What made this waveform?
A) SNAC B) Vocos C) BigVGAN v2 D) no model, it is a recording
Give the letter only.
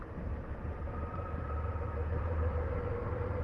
C